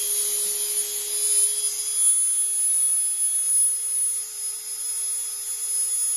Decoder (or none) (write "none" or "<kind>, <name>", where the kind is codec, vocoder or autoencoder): none